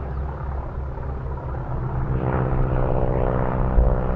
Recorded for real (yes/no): yes